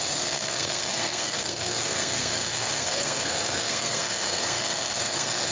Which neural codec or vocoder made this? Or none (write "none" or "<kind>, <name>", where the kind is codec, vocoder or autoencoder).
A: codec, SNAC